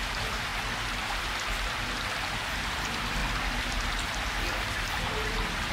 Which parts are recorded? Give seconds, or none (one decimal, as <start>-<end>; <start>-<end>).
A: 0.5-1.1; 3.2-5.7